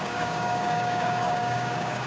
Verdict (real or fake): fake